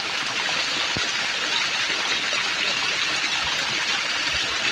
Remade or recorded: remade